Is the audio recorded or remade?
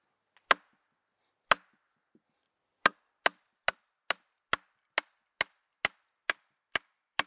recorded